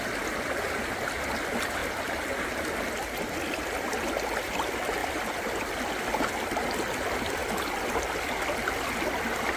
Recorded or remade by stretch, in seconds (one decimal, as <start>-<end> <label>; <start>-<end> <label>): 0.0-5.0 recorded; 5.0-5.8 remade; 5.8-9.6 recorded